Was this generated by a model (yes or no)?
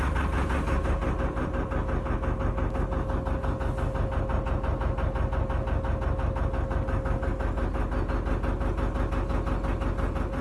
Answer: no